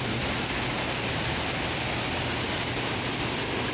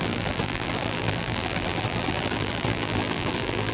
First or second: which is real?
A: first